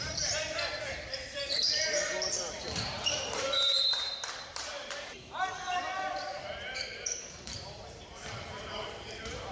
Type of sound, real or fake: fake